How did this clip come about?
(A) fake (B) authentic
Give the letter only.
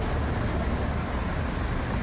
B